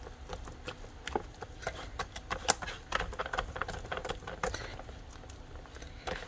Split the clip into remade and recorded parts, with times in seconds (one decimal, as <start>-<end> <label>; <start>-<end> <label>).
0.0-3.2 recorded; 3.2-4.5 remade; 4.5-6.3 recorded